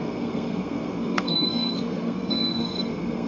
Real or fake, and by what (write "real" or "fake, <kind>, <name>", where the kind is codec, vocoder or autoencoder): fake, codec, SNAC